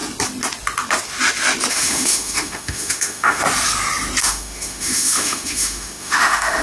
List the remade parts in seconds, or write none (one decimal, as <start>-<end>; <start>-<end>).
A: 1.7-3.4; 4.2-6.6